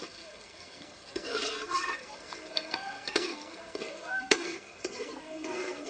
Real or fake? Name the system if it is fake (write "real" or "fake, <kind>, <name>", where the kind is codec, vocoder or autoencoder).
fake, codec, SNAC